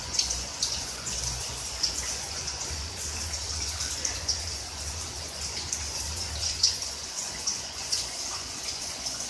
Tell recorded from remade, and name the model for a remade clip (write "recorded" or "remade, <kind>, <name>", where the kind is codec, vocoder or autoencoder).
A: remade, vocoder, Vocos